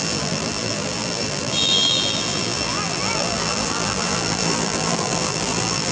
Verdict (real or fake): fake